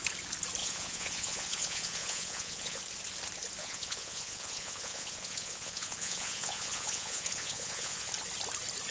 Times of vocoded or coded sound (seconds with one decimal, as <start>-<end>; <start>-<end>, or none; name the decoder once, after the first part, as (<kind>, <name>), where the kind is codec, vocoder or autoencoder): 0.6-2.8 (vocoder, Vocos); 3.6-8.1